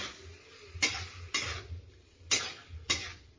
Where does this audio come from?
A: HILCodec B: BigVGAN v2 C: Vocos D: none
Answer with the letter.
D